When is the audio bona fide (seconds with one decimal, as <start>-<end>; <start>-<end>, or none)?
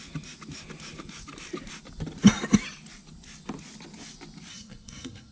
0.0-4.5